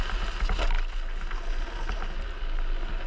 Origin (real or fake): real